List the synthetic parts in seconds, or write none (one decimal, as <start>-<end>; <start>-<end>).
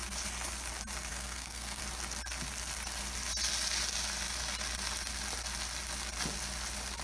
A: 1.1-1.8